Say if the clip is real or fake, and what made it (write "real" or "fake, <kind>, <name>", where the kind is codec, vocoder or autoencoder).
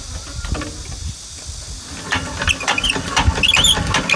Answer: real